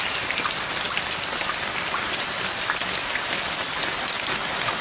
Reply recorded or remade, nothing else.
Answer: recorded